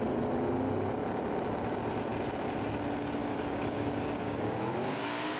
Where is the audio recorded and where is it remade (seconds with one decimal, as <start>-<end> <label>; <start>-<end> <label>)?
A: 0.0-3.2 recorded; 3.2-5.4 remade